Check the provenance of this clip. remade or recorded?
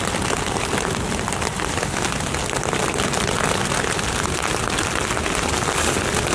recorded